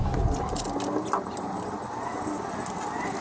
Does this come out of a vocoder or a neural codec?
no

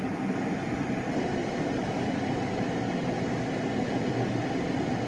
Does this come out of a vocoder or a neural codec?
no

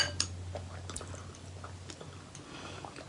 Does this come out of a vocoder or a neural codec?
no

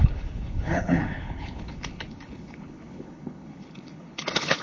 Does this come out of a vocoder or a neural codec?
yes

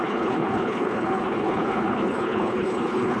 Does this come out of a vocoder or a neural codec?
yes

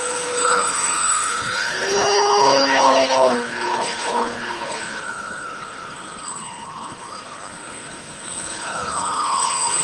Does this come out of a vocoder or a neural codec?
yes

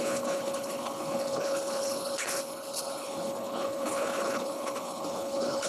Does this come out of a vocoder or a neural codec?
yes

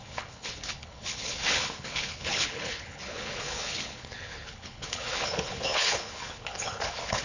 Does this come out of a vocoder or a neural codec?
yes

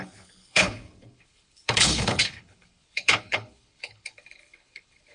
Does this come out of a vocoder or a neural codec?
yes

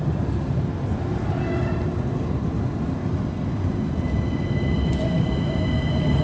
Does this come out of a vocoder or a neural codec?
no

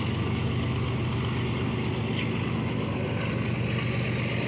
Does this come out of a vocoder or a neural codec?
no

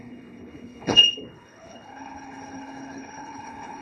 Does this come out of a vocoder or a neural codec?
yes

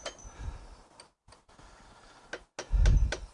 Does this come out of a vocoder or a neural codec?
no